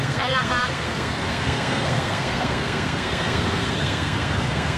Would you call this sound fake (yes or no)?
yes